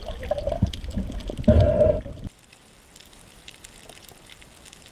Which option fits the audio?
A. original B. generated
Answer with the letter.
A